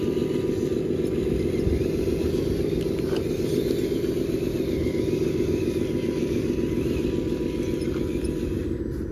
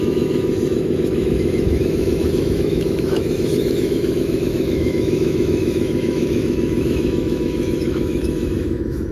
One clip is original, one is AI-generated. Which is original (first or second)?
first